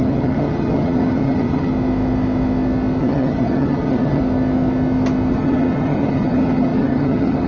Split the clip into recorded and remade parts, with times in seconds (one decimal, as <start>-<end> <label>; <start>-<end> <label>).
0.0-1.7 remade; 1.7-3.0 recorded; 3.0-4.2 remade; 4.2-5.3 recorded; 5.3-7.5 remade